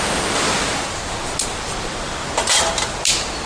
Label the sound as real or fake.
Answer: real